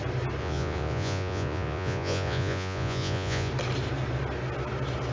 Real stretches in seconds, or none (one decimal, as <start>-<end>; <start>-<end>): 0.0-0.4; 3.5-5.1